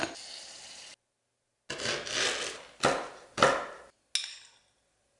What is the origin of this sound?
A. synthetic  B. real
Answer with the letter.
B